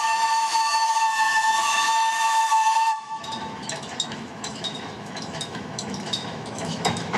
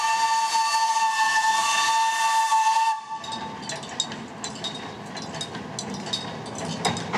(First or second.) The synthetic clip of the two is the first